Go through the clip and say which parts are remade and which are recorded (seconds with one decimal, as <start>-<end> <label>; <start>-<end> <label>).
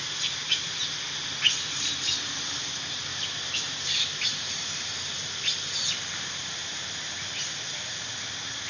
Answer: 0.0-8.7 recorded